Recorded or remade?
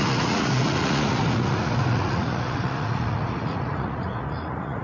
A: remade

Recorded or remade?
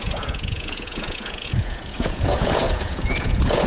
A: remade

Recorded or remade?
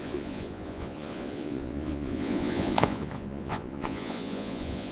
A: remade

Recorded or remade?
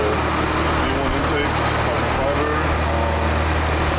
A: recorded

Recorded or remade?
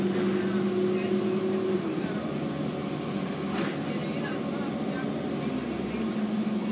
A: recorded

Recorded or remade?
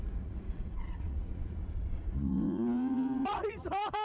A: remade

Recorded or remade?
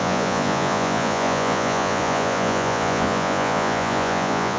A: remade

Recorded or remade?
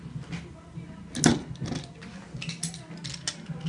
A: recorded